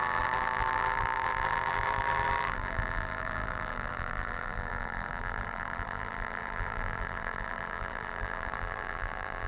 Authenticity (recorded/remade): remade